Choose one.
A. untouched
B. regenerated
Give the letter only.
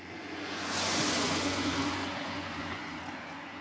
B